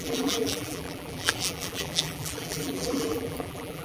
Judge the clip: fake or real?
fake